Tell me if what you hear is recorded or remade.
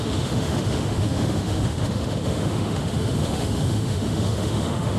remade